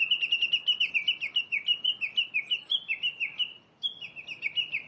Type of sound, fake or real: real